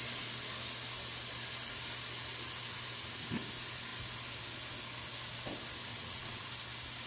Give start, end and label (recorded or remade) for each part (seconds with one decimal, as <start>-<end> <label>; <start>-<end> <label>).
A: 0.0-5.9 recorded; 5.9-6.5 remade; 6.5-7.1 recorded